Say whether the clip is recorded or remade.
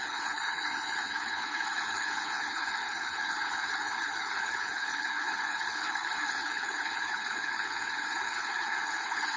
remade